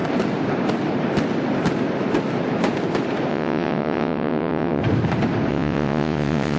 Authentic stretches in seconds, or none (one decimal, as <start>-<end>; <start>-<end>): 0.0-3.3; 4.8-5.5